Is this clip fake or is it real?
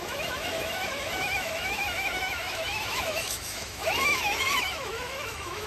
fake